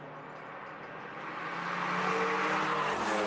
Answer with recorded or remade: recorded